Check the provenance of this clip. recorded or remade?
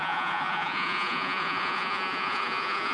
remade